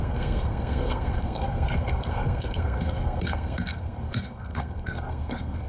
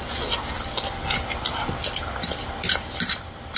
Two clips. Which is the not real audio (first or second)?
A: first